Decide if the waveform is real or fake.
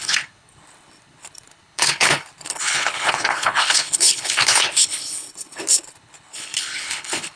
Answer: fake